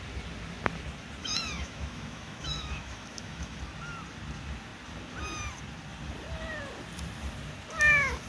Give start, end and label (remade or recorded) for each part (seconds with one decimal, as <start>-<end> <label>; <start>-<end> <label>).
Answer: 0.0-1.2 recorded; 1.2-3.6 remade; 3.6-8.3 recorded